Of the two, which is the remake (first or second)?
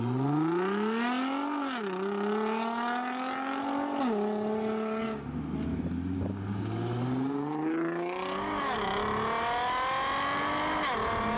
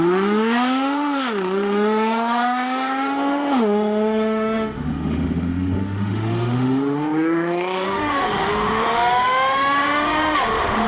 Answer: second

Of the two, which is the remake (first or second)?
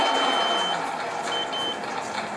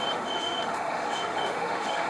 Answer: second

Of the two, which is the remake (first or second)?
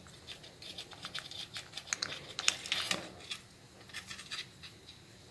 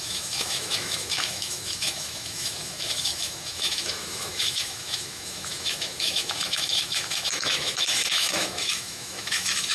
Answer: second